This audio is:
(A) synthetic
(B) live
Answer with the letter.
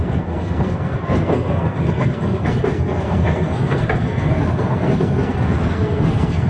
A